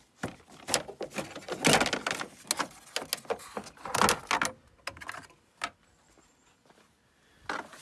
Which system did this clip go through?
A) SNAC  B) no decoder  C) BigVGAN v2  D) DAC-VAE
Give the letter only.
B